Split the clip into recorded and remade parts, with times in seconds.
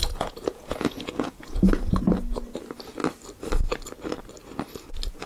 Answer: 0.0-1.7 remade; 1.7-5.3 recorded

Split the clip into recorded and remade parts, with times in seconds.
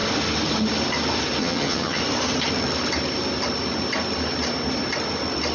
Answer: 0.0-1.4 recorded; 1.4-2.0 remade; 2.0-5.5 recorded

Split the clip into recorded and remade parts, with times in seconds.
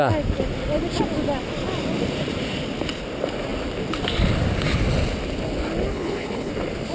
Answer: 0.0-5.9 recorded; 5.9-6.5 remade; 6.5-6.9 recorded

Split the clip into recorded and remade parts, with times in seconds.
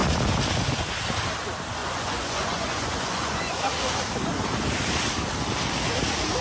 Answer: 0.0-1.8 recorded; 1.8-3.6 remade; 3.6-6.4 recorded